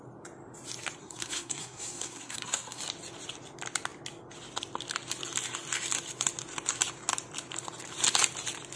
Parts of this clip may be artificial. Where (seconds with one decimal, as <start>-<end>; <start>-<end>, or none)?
1.0-2.8